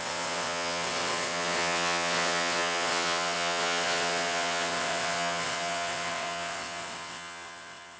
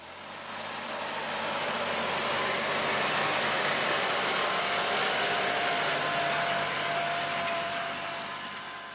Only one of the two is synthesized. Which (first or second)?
first